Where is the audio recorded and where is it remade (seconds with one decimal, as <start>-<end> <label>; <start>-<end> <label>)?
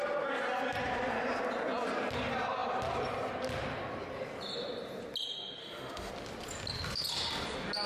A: 0.0-5.6 recorded; 5.6-6.1 remade; 6.1-7.9 recorded